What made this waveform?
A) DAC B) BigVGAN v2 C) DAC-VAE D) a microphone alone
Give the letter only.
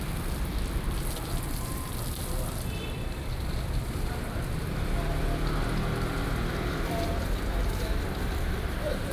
B